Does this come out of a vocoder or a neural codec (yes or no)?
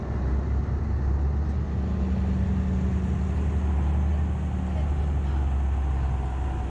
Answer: no